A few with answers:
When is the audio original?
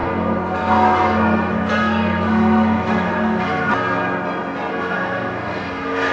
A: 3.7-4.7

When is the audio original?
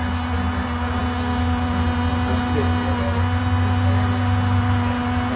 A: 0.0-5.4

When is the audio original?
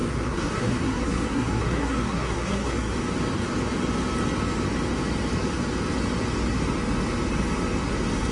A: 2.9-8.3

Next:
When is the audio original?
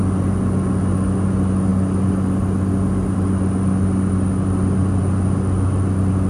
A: 0.0-6.3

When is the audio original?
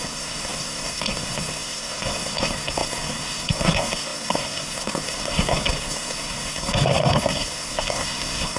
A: none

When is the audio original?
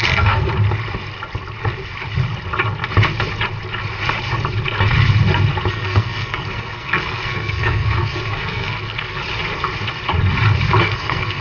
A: 0.5-5.7; 9.2-10.8